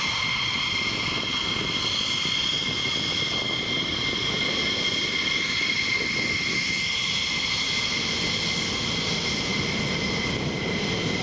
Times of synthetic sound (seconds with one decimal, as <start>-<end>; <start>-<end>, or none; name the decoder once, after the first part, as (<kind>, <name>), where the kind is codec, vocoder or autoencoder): none